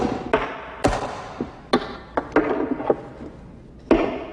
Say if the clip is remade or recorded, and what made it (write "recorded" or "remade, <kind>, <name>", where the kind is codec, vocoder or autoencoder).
recorded